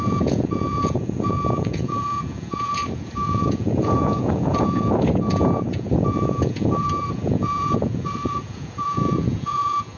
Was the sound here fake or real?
fake